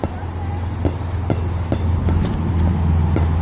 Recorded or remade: recorded